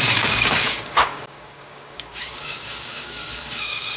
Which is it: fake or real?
fake